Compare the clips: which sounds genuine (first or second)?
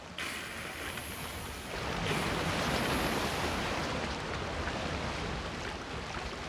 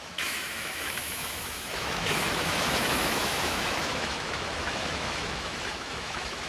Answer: first